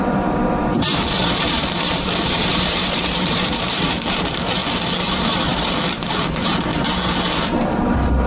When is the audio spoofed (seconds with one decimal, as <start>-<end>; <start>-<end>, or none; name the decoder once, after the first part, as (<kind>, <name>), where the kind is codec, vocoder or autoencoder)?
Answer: 0.0-4.6 (vocoder, BigVGAN v2); 5.1-6.7; 7.4-8.3